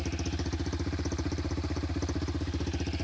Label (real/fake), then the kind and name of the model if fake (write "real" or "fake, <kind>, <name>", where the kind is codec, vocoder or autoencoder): fake, vocoder, BigVGAN v2